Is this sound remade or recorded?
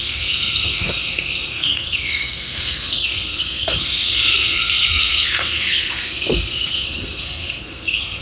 remade